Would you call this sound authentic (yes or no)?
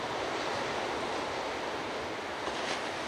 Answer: yes